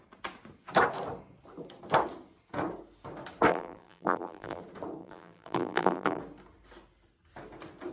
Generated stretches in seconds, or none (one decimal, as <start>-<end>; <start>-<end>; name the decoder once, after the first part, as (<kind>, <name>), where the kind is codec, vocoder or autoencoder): 3.5-4.6 (vocoder, BigVGAN v2); 5.0-6.2

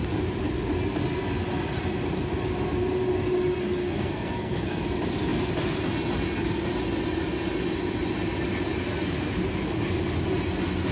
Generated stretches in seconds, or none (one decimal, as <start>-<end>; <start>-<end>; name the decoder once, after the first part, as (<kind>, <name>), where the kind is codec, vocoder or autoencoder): 3.8-4.8 (codec, SNAC)

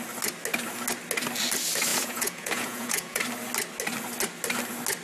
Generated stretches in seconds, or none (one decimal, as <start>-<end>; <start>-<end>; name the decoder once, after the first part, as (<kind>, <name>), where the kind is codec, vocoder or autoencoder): 1.9-3.2 (vocoder, Vocos)

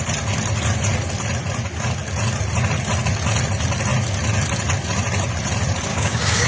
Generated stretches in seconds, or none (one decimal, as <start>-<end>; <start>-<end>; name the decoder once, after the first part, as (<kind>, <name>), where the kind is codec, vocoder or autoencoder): 5.9-6.5 (codec, DAC)

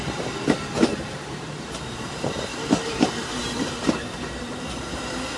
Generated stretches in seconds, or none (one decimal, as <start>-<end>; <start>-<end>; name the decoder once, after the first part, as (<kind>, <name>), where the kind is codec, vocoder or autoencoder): 0.9-1.7 (vocoder, BigVGAN v2); 2.5-3.7

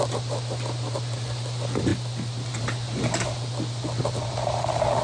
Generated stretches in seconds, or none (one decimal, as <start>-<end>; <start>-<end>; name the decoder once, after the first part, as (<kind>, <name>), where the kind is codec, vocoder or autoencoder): none